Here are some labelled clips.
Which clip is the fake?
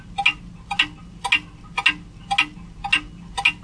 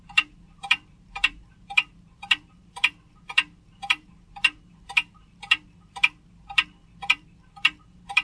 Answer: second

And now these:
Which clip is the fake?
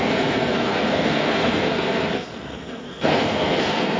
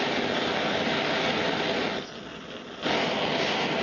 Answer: first